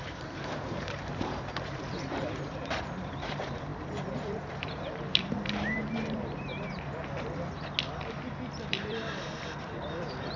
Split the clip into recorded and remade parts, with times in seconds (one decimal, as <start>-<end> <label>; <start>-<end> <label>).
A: 0.0-6.9 remade; 6.9-8.7 recorded; 8.7-10.4 remade